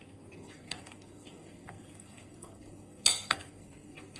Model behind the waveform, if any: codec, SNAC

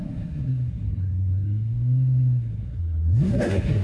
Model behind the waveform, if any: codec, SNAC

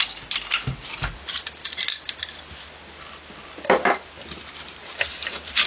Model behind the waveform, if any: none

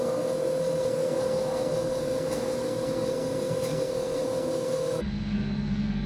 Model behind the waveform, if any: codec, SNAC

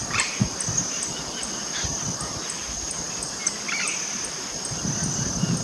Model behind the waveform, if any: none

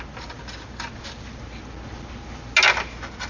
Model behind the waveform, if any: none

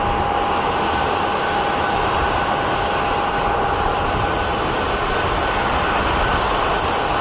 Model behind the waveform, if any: none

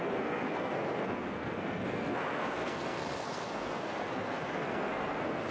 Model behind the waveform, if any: codec, SNAC